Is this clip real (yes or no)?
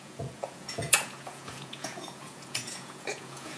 no